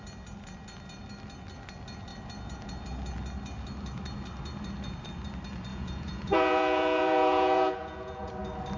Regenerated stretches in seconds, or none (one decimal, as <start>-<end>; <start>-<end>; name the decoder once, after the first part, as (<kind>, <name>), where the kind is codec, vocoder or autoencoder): 5.7-8.3 (vocoder, Vocos)